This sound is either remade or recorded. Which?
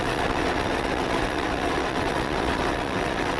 remade